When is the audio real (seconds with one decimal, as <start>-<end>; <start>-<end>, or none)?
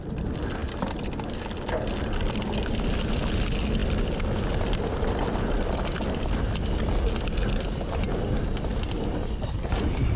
0.0-10.2